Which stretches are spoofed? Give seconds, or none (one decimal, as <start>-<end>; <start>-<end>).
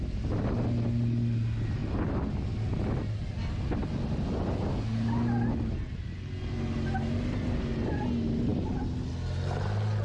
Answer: none